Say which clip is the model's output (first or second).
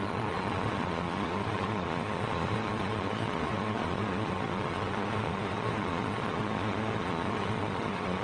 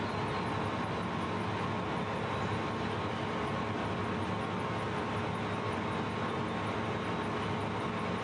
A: first